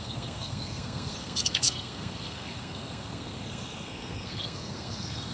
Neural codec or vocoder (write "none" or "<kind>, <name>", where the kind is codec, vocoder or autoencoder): codec, SNAC